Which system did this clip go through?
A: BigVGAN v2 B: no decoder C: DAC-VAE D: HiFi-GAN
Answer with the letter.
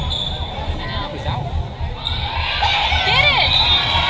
B